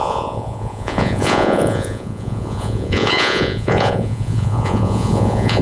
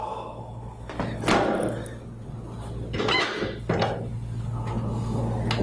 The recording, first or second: second